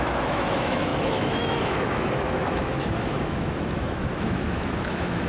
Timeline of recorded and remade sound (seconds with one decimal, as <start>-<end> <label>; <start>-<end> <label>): 0.0-5.3 remade